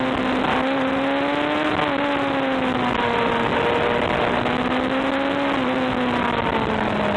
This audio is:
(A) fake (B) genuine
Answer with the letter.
B